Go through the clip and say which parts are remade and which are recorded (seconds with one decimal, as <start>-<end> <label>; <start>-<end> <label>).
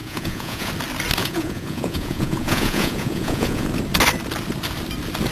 0.0-0.7 remade; 0.7-1.2 recorded; 1.2-3.7 remade; 3.7-5.3 recorded